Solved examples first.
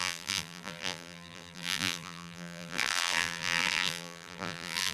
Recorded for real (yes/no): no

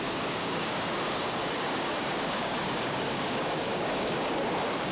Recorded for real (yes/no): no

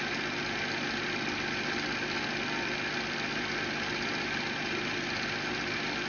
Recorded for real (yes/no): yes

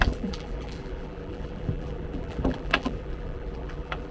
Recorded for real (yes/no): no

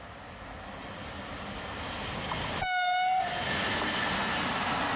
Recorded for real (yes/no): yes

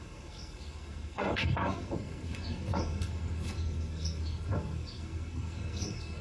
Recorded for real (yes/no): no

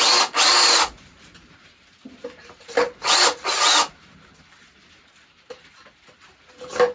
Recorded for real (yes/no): yes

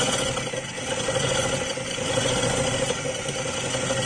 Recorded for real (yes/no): no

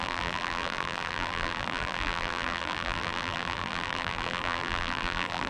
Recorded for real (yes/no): no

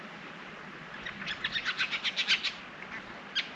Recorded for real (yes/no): yes